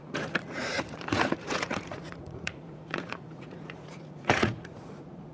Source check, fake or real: fake